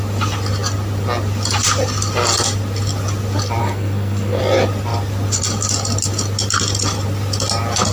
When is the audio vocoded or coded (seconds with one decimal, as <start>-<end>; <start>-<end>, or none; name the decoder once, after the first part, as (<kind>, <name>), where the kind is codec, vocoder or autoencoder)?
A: 3.6-4.4 (codec, SNAC)